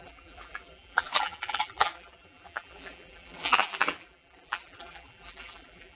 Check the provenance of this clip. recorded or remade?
remade